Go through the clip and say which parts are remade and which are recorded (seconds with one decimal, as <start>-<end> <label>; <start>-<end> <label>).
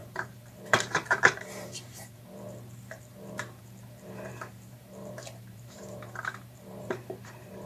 0.0-7.7 remade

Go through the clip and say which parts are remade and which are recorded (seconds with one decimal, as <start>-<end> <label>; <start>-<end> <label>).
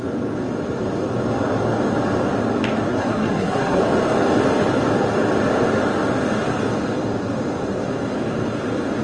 0.0-2.9 recorded; 2.9-3.8 remade; 3.8-9.0 recorded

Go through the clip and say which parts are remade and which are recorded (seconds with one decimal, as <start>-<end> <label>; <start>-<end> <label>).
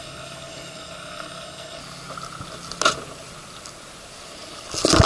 0.0-1.8 remade; 1.8-5.1 recorded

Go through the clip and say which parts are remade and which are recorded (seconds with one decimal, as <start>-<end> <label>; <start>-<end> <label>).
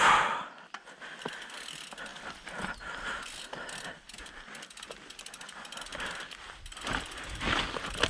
0.0-8.1 recorded